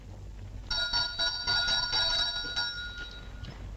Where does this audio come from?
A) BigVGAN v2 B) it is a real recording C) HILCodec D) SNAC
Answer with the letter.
B